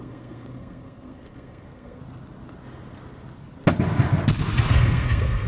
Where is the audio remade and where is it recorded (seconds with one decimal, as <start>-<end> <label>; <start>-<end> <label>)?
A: 0.0-2.0 remade; 2.0-4.7 recorded; 4.7-5.5 remade